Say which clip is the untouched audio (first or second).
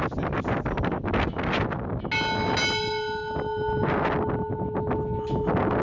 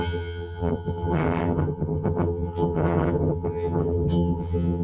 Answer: first